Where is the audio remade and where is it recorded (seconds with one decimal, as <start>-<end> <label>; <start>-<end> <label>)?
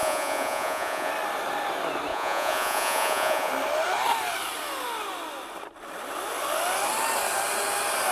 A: 0.0-1.1 remade; 1.1-2.1 recorded; 2.1-3.5 remade; 3.5-8.1 recorded